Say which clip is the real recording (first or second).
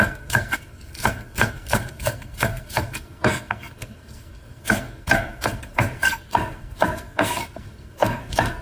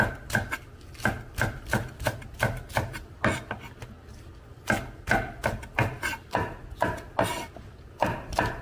second